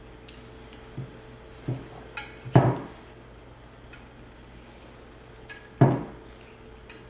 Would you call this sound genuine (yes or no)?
yes